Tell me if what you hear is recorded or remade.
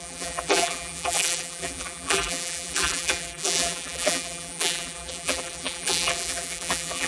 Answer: remade